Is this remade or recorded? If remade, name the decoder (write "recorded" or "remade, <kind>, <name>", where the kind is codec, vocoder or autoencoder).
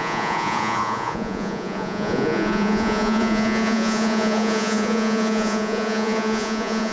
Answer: remade, vocoder, Vocos